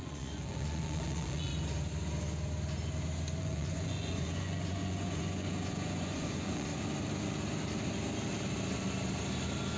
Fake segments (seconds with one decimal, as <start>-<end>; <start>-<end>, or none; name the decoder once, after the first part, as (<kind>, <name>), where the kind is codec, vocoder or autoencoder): 0.0-1.5 (vocoder, Vocos); 3.4-6.7